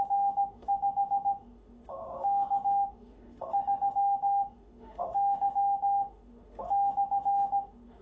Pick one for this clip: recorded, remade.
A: remade